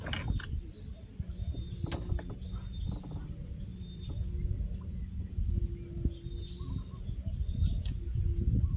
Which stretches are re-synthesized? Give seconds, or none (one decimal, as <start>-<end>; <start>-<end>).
none